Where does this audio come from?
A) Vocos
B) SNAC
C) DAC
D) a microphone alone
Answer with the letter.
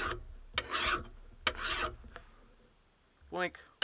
D